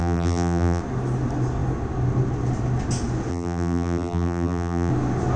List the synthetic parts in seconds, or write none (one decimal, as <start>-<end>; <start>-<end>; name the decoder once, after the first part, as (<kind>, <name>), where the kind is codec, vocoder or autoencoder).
0.0-0.8 (vocoder, BigVGAN v2); 3.3-4.9